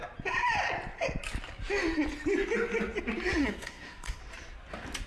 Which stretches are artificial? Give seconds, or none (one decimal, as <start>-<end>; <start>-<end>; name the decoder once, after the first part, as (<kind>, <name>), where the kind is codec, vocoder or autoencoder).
3.4-4.2 (codec, SNAC)